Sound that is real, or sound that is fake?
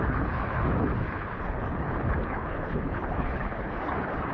fake